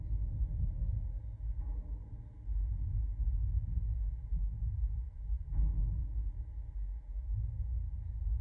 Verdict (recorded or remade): recorded